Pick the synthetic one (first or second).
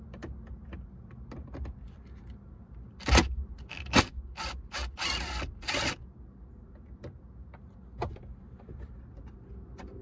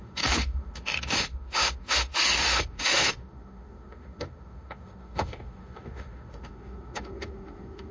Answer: second